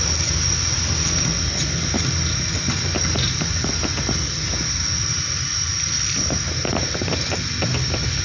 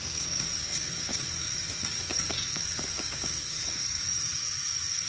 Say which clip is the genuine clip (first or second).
first